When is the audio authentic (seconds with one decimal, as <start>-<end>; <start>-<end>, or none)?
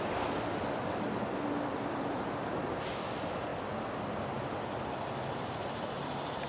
0.0-1.7; 2.4-6.5